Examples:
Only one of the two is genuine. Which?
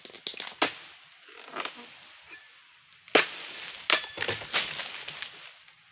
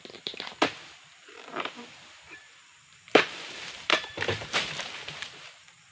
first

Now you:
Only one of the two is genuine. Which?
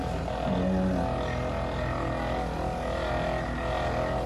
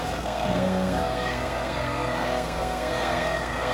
first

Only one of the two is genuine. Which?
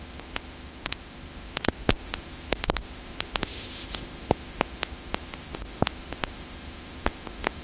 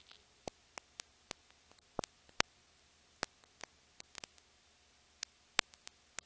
second